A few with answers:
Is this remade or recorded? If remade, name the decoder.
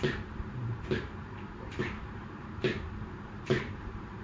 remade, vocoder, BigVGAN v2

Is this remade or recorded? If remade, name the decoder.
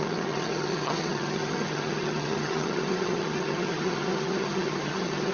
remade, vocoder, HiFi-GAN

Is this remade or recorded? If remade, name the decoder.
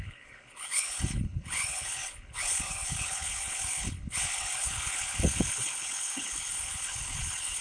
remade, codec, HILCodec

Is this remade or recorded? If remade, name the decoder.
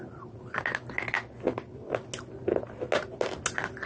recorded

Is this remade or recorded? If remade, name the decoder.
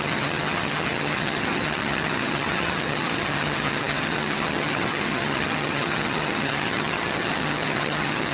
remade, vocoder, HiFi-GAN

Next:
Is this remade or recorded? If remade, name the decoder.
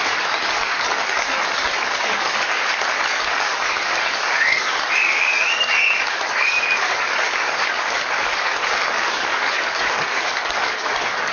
remade, codec, DAC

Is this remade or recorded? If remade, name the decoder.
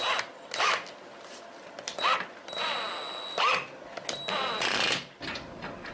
recorded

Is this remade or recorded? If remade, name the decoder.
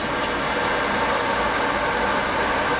recorded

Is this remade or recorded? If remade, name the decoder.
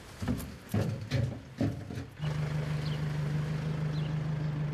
recorded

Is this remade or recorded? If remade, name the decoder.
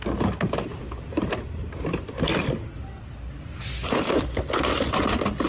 recorded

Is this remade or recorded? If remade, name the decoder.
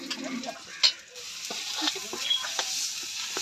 recorded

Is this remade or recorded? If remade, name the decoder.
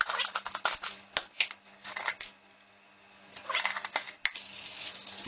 recorded